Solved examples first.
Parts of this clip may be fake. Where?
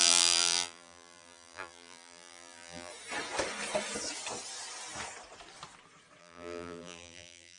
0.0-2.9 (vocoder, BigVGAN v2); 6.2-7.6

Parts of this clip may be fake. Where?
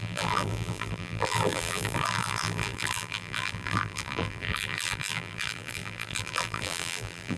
0.0-7.4 (vocoder, BigVGAN v2)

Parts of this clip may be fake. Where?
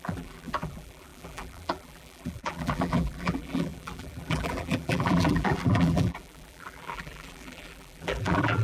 0.0-8.6 (vocoder, BigVGAN v2)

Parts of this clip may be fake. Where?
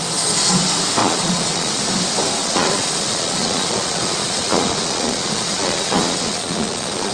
1.0-1.8 (vocoder, Vocos); 2.4-7.1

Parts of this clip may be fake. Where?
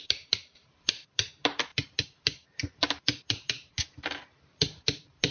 0.0-5.3 (vocoder, BigVGAN v2)